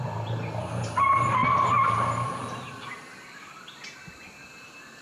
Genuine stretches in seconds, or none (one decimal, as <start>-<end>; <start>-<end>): 0.0-5.0